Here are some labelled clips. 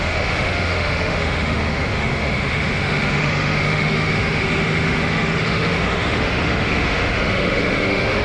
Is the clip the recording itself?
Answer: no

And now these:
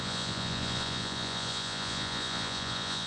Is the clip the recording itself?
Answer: no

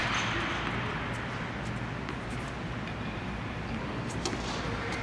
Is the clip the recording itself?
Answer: yes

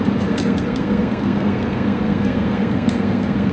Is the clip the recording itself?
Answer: no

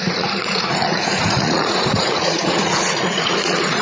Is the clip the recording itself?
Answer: no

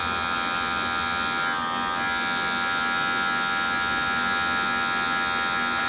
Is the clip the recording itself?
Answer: yes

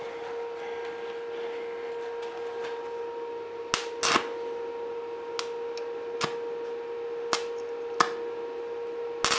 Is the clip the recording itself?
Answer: yes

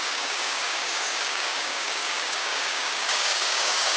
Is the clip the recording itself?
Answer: no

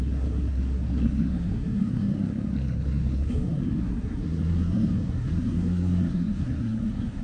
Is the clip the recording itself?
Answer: no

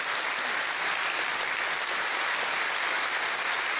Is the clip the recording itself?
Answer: yes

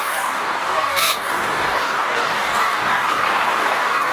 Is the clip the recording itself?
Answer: no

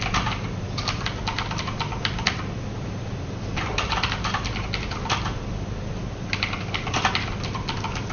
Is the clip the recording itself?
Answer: no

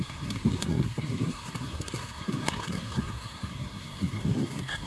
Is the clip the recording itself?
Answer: no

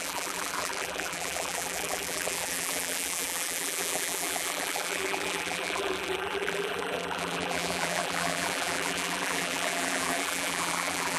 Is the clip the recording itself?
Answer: no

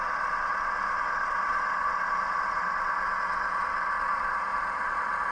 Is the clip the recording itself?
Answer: no